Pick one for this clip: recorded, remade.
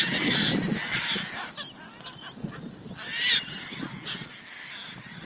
recorded